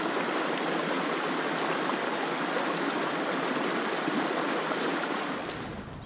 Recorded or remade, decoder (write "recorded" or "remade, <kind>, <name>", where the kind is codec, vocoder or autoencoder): recorded